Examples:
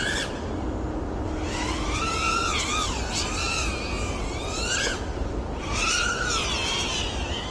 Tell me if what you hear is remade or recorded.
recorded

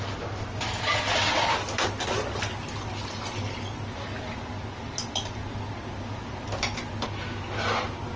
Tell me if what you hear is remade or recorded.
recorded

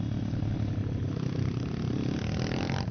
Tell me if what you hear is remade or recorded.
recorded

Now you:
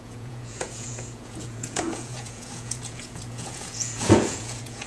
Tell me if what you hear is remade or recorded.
remade